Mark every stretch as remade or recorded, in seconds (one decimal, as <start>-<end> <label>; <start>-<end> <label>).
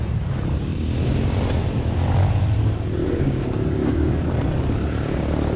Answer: 0.0-0.7 recorded; 0.7-1.2 remade; 1.2-3.0 recorded; 3.0-4.2 remade; 4.2-5.6 recorded